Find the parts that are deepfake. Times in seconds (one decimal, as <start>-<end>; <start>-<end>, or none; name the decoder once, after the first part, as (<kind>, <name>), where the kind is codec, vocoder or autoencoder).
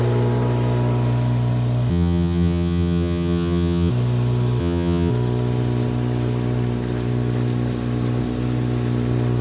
1.9-3.9 (vocoder, HiFi-GAN); 4.6-5.1